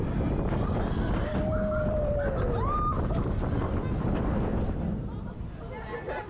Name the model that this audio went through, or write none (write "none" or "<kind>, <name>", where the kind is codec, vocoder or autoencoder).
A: none